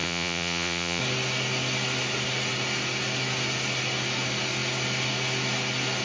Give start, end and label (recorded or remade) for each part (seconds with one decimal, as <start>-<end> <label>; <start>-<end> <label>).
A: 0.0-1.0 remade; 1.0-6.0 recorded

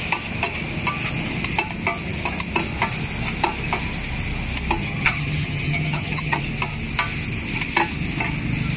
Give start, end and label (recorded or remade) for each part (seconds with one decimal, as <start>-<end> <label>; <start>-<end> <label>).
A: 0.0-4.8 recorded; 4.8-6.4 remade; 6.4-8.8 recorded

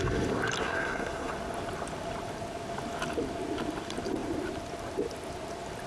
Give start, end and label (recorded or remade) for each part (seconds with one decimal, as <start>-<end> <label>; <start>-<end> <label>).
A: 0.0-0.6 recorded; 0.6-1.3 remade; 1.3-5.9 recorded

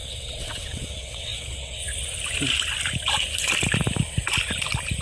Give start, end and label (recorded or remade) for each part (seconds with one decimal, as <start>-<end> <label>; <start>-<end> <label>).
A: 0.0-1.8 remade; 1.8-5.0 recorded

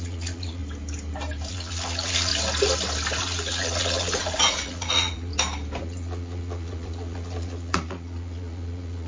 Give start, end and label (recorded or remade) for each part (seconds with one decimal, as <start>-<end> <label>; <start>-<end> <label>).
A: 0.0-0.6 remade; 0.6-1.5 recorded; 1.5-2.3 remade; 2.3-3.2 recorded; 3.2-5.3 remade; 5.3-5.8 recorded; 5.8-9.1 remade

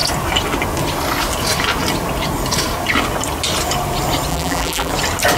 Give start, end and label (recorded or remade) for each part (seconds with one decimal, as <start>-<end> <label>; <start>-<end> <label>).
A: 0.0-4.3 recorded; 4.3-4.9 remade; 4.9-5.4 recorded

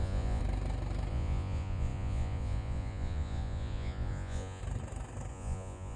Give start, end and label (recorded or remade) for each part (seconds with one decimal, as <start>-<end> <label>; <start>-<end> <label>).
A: 0.0-0.4 remade; 0.4-1.1 recorded; 1.1-4.6 remade; 4.6-5.3 recorded; 5.3-6.0 remade

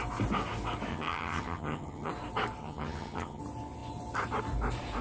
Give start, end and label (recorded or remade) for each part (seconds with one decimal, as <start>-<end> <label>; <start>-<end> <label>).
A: 0.0-0.9 recorded; 0.9-2.1 remade; 2.1-2.6 recorded; 2.6-3.4 remade; 3.4-5.0 recorded